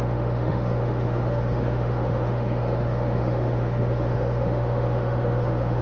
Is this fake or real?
fake